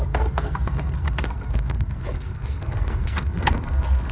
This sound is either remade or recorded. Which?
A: remade